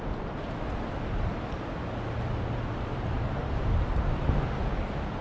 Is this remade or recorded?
recorded